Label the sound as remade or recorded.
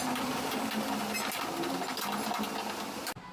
recorded